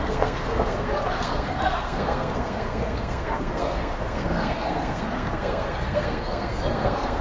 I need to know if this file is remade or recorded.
remade